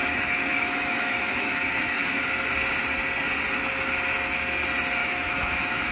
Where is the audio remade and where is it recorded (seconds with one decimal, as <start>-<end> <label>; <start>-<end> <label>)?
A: 0.0-2.2 remade; 2.2-5.0 recorded; 5.0-5.9 remade